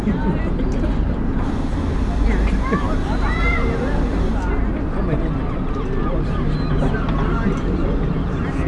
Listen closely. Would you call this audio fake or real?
real